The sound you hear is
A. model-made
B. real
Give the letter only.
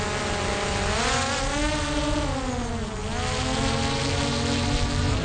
B